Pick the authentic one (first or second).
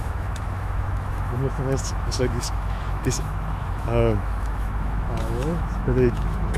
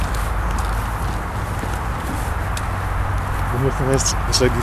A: second